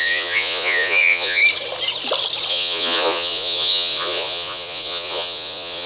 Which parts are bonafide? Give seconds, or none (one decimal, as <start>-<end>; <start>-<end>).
1.4-2.5